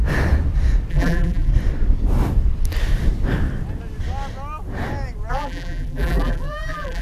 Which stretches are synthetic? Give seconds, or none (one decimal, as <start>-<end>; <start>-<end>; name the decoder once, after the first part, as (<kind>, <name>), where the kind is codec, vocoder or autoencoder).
0.9-1.5 (vocoder, BigVGAN v2); 5.3-7.0